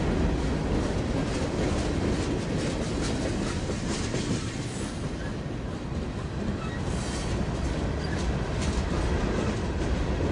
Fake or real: real